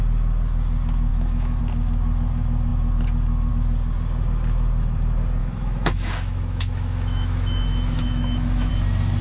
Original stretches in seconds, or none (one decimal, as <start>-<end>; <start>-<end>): 0.0-1.1; 1.6-5.4; 8.7-9.2